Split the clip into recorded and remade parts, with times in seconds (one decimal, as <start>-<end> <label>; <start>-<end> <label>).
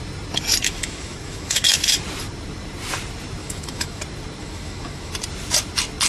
0.0-0.6 recorded; 0.6-2.0 remade; 2.0-3.4 recorded; 3.4-4.0 remade; 4.0-4.4 recorded; 4.4-5.1 remade; 5.1-6.1 recorded